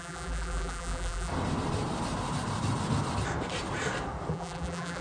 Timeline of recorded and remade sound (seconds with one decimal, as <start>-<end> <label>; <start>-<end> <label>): 0.0-1.3 remade; 1.3-4.3 recorded; 4.3-5.0 remade